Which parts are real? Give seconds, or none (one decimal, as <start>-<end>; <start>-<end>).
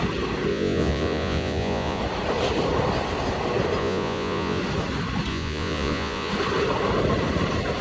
0.0-0.5; 2.0-3.8; 4.6-5.3; 6.3-7.8